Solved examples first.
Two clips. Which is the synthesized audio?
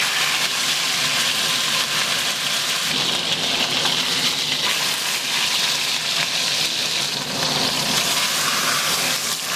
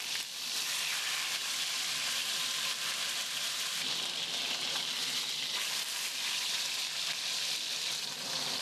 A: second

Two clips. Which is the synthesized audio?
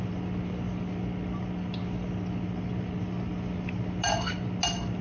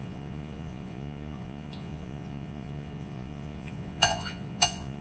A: second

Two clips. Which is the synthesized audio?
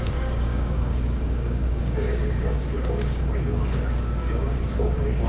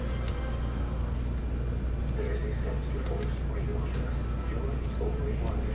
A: first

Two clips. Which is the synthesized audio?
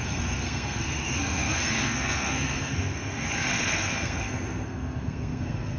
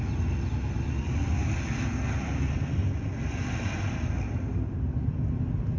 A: first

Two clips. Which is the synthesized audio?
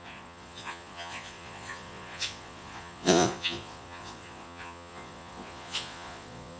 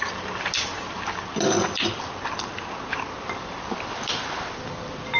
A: first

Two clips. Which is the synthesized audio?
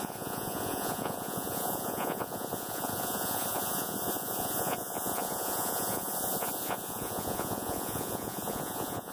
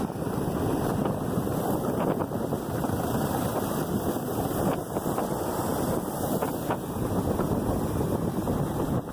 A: first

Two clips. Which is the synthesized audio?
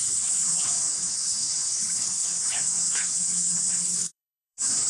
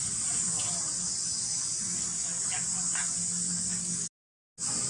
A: first